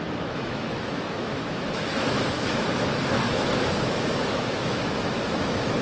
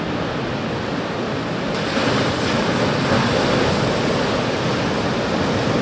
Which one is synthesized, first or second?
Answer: first